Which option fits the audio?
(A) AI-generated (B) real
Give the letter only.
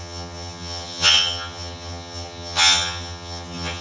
A